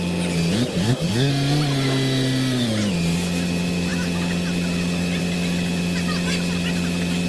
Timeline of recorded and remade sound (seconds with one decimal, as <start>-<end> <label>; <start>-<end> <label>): 0.0-0.7 recorded; 0.7-1.3 remade; 1.3-7.3 recorded